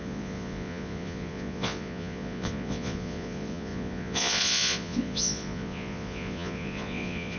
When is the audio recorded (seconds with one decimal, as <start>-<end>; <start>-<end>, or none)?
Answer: none